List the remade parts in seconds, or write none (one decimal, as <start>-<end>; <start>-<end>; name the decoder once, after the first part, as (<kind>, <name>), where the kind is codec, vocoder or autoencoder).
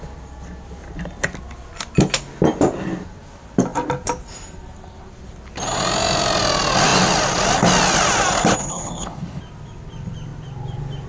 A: 8.6-9.4 (codec, HILCodec)